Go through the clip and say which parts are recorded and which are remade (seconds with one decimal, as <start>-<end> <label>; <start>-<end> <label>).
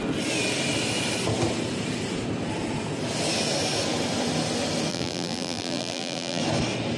0.0-4.9 recorded; 4.9-6.4 remade; 6.4-7.0 recorded